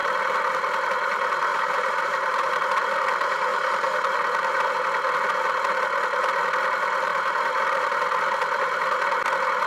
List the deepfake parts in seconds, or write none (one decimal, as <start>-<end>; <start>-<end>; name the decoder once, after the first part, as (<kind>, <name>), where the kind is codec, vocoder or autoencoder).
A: 1.5-2.5 (vocoder, BigVGAN v2); 7.1-7.6